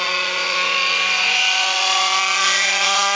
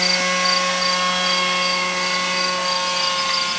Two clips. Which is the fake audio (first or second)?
first